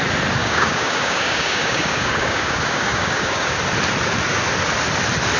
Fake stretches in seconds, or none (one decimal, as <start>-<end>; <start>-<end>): 0.4-3.6